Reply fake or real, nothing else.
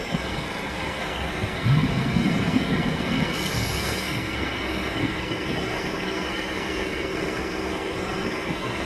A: fake